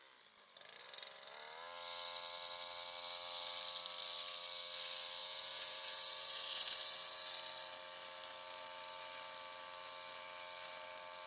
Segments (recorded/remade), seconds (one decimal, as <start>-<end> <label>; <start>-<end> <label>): 0.0-5.2 recorded; 5.2-7.2 remade; 7.2-11.3 recorded